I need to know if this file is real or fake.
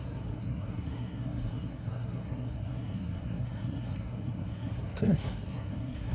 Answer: fake